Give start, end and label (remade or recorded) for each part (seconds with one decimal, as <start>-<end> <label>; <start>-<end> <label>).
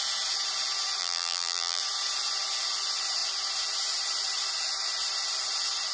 0.0-1.0 recorded; 1.0-1.8 remade; 1.8-5.9 recorded